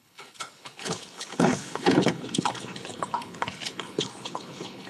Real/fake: fake